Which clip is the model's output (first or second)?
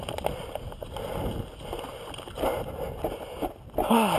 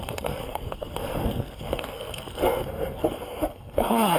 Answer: second